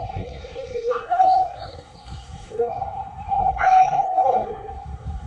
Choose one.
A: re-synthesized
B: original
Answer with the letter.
A